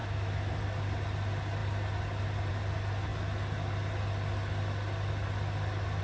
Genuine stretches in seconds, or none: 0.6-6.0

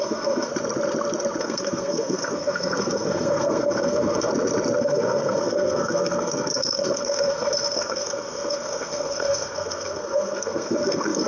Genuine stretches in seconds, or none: 0.5-1.4; 4.3-4.8

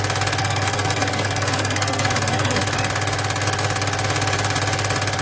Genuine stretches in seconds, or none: 0.0-0.4; 2.6-5.2

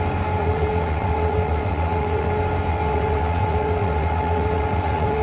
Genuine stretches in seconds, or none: 0.0-0.4; 2.3-2.7

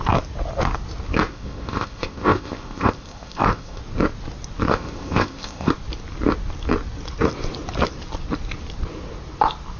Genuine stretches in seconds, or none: 0.0-1.3; 3.8-4.7; 5.7-9.8

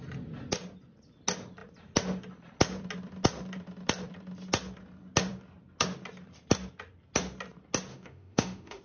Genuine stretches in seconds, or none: 0.0-7.9